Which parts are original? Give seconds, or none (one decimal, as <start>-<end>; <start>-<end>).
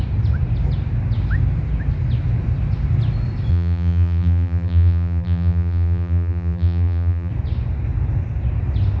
0.0-3.5; 7.3-9.0